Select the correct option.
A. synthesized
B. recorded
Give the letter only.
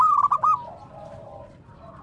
B